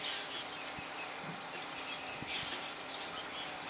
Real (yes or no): yes